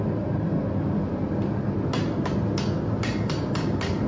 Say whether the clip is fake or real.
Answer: real